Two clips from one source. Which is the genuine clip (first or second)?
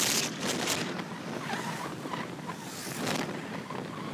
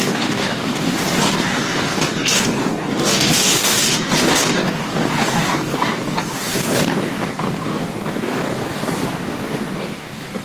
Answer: first